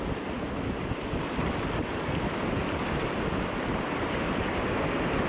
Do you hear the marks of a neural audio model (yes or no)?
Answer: no